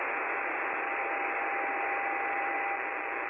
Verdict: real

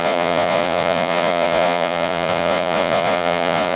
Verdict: fake